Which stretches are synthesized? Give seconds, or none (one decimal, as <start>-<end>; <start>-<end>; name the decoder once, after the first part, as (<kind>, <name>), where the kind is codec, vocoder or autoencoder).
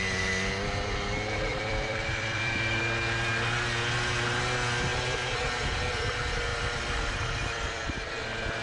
1.5-2.8 (vocoder, BigVGAN v2); 4.9-5.4; 6.5-8.0